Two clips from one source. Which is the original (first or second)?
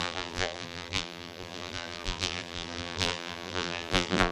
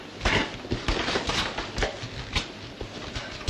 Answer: second